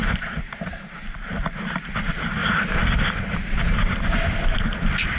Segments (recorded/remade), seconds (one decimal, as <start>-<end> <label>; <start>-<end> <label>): 0.0-0.9 remade; 0.9-2.4 recorded; 2.4-3.9 remade; 3.9-5.2 recorded